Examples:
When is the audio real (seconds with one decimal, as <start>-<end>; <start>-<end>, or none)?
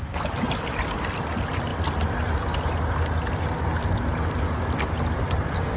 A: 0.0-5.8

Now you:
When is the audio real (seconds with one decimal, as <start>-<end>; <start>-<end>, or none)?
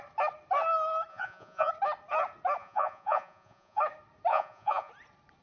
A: 0.0-1.1; 1.7-2.6; 3.8-4.3; 4.9-5.4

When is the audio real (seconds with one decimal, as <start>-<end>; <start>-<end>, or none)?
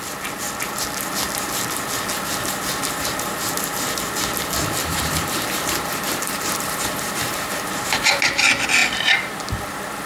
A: 0.0-4.8; 8.2-10.1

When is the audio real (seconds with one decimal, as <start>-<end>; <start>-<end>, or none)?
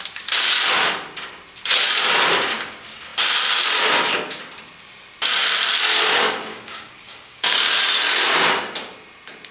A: 0.0-6.5; 7.8-9.5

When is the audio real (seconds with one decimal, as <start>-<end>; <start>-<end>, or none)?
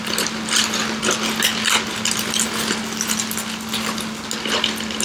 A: 0.0-5.0